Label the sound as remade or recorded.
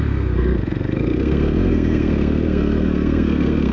remade